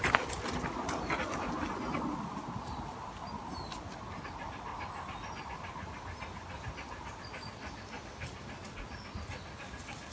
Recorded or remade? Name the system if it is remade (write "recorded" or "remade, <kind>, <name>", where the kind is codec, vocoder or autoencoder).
recorded